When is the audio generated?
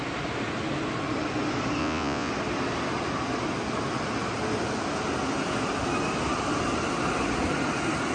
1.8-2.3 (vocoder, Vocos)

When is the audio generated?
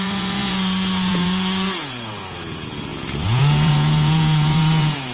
0.0-5.1 (vocoder, Vocos)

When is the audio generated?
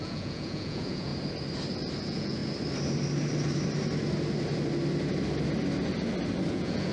0.0-1.1 (vocoder, Vocos); 2.0-2.4; 6.5-6.9